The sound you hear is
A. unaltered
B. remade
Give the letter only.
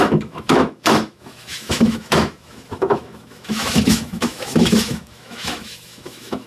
B